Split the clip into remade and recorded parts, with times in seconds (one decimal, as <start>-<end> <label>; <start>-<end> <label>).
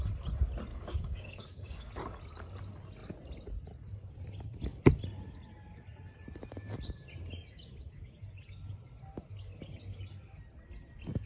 0.0-0.7 recorded; 0.7-1.9 remade; 1.9-11.3 recorded